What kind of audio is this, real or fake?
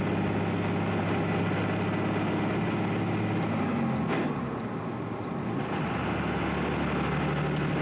real